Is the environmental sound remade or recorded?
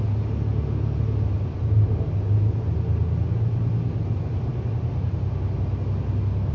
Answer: recorded